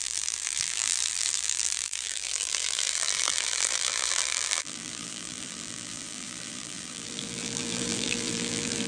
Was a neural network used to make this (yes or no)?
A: yes